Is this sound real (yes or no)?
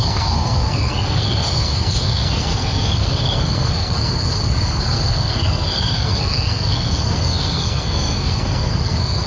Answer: no